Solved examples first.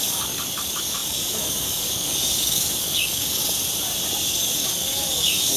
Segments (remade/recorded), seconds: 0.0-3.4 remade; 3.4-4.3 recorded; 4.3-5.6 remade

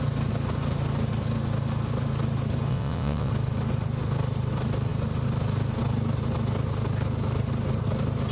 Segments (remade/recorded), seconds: 0.0-2.7 recorded; 2.7-3.3 remade; 3.3-8.3 recorded

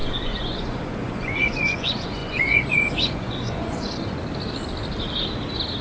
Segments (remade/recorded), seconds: 0.0-4.2 remade; 4.2-5.8 recorded

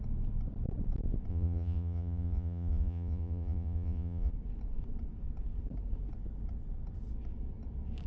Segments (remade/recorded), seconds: 0.0-1.3 recorded; 1.3-4.3 remade; 4.3-8.1 recorded

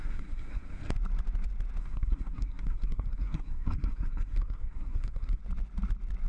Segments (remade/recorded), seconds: 0.0-0.8 remade; 0.8-1.8 recorded; 1.8-5.4 remade; 5.4-6.3 recorded

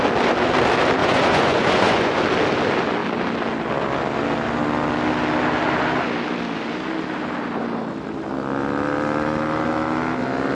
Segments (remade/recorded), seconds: 0.0-1.0 recorded; 1.0-2.2 remade; 2.2-10.5 recorded

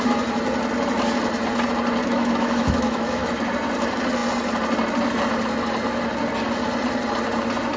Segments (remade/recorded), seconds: 0.0-2.0 recorded; 2.0-3.5 remade; 3.5-7.8 recorded

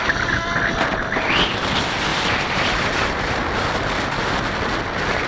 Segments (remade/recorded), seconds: 0.0-2.1 recorded; 2.1-3.4 remade; 3.4-5.3 recorded